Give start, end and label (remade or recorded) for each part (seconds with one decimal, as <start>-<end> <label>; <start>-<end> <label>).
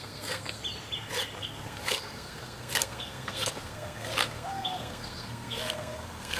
0.0-0.6 remade; 0.6-1.4 recorded; 1.4-6.4 remade